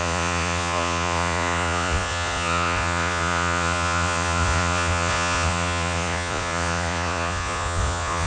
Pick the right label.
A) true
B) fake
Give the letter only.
B